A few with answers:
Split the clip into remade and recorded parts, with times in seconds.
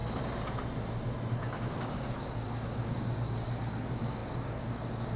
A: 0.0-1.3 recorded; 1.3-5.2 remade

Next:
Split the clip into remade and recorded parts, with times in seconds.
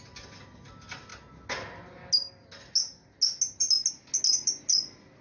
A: 0.0-5.2 recorded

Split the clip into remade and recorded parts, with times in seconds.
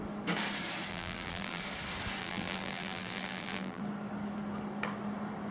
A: 0.0-0.9 recorded; 0.9-1.6 remade; 1.6-2.2 recorded; 2.2-3.8 remade; 3.8-5.5 recorded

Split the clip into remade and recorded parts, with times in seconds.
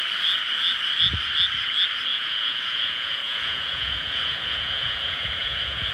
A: 0.0-2.1 recorded; 2.1-5.9 remade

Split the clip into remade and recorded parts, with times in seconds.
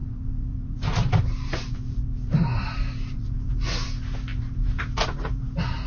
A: 0.0-3.5 remade; 3.5-4.3 recorded; 4.3-5.9 remade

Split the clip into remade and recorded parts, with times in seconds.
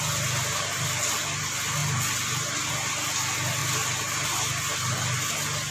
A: 0.0-5.7 recorded